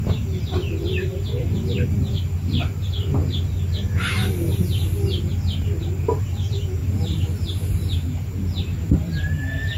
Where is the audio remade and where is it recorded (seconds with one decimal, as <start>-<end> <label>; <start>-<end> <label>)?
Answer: 0.0-4.2 remade; 4.2-5.8 recorded; 5.8-9.8 remade